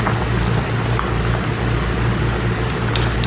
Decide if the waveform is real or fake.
real